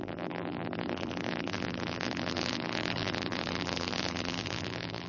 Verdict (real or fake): fake